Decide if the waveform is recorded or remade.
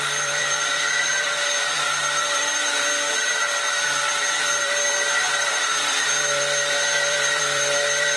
remade